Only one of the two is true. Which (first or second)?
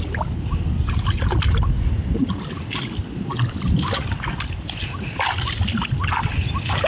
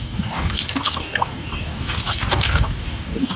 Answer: first